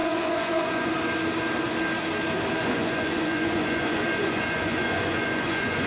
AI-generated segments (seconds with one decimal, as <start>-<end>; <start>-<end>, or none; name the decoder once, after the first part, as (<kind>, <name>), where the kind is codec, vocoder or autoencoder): 0.0-0.9 (vocoder, Vocos); 2.6-5.9